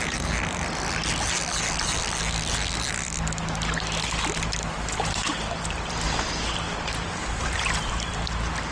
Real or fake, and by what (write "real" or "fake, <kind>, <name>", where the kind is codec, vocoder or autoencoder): fake, vocoder, BigVGAN v2